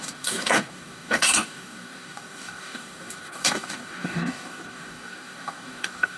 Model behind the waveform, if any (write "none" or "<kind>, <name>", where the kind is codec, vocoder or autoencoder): codec, DAC